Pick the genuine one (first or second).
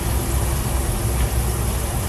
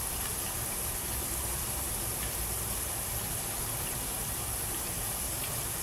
first